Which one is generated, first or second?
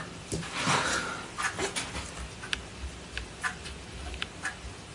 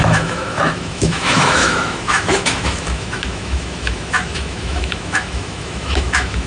second